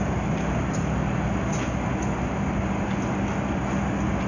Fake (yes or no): no